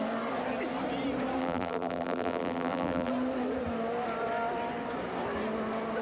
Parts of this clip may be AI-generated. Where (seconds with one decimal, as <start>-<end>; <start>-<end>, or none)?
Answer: 1.4-3.1